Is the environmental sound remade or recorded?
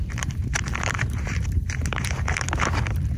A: remade